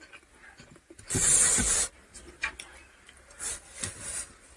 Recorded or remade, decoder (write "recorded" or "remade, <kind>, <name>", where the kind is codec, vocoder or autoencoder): recorded